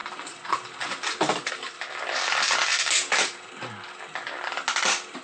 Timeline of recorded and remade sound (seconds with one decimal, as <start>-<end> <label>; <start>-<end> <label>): 0.0-2.7 recorded; 2.7-3.5 remade; 3.5-5.2 recorded